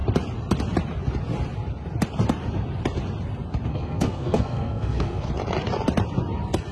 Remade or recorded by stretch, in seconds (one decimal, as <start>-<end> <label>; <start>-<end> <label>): 0.0-3.7 recorded; 3.7-5.3 remade; 5.3-6.7 recorded